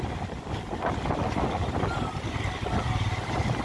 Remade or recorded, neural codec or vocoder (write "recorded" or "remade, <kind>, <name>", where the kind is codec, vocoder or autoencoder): recorded